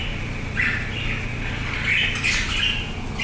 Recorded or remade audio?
recorded